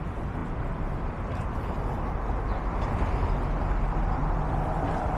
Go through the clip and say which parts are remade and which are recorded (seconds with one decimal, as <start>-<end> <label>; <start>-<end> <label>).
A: 0.0-5.2 recorded